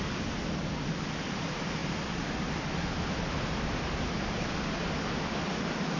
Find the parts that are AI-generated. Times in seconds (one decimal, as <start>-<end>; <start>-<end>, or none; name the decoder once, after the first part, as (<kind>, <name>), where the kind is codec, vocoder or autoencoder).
none